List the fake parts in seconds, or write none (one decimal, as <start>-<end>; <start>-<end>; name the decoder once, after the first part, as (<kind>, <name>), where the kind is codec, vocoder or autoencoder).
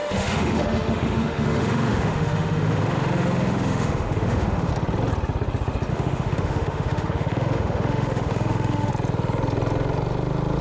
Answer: 0.0-4.7 (autoencoder, DAC-VAE); 5.9-8.9